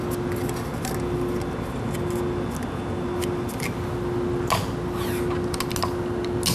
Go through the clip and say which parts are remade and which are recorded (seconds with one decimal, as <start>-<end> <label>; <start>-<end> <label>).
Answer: 0.0-6.5 recorded